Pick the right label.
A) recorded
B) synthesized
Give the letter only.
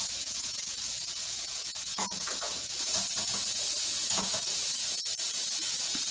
B